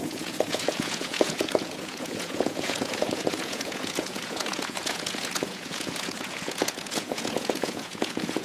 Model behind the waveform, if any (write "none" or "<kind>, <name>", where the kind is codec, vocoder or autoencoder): vocoder, Vocos